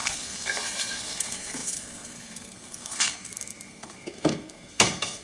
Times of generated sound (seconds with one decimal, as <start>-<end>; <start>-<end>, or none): 0.0-5.2